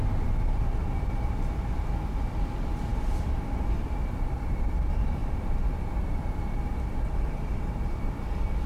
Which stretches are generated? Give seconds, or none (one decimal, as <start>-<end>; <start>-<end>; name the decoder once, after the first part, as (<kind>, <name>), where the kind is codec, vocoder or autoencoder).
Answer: 2.9-3.9 (vocoder, BigVGAN v2); 5.2-5.9

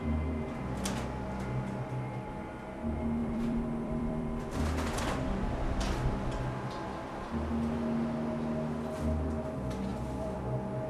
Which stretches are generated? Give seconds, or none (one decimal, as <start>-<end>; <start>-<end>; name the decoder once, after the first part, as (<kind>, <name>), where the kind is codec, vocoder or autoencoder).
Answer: 3.2-4.6 (vocoder, BigVGAN v2); 9.9-10.4

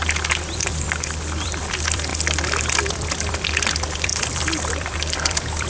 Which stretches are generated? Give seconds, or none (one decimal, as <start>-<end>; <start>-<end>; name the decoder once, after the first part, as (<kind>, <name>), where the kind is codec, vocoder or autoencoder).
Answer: 0.0-2.1 (vocoder, BigVGAN v2); 2.9-5.7

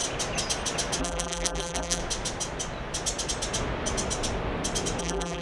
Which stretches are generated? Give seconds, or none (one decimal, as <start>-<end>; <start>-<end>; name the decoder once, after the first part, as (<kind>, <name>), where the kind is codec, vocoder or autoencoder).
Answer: 1.0-2.0 (vocoder, BigVGAN v2); 5.0-5.4

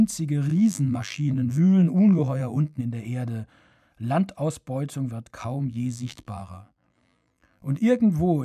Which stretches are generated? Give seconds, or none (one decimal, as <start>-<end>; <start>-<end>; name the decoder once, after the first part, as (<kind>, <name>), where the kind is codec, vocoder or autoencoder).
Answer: 0.5-2.8 (vocoder, BigVGAN v2); 5.4-8.0